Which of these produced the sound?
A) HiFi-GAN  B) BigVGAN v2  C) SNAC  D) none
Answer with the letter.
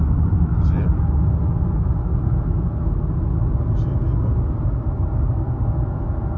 D